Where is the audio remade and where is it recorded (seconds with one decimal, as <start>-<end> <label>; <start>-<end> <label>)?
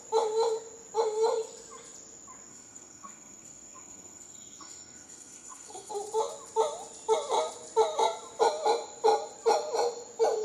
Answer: 0.0-2.5 recorded; 2.5-5.9 remade; 5.9-10.4 recorded